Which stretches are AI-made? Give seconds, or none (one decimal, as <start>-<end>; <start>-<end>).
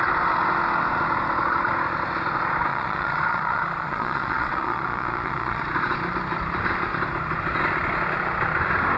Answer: 2.7-5.6